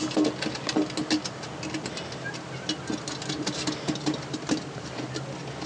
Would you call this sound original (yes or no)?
yes